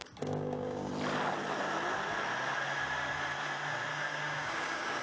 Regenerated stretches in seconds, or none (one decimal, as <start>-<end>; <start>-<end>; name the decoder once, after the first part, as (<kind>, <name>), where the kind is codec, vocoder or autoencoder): 0.0-0.9 (codec, DAC); 3.9-5.0